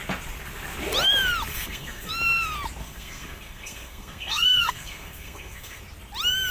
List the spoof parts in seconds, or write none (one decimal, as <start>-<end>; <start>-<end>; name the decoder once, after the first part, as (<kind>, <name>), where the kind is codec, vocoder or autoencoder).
1.5-2.1 (codec, SNAC); 2.8-5.8